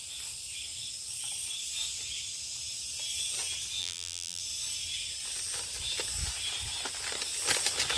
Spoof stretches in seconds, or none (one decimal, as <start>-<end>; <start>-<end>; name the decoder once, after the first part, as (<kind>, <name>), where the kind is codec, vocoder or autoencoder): 3.8-4.4 (vocoder, BigVGAN v2)